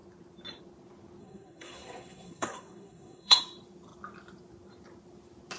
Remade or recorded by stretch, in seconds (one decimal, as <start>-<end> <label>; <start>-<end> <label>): 0.0-1.2 recorded; 1.2-3.4 remade; 3.4-5.6 recorded